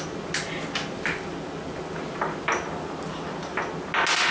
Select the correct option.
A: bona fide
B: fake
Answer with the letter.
A